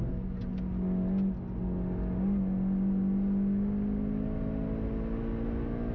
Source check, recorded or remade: recorded